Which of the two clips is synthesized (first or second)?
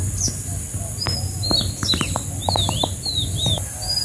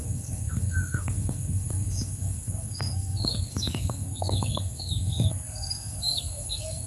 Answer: second